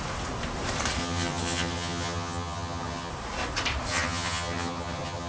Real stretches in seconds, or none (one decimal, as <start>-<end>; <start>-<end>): 0.0-1.0; 3.1-3.9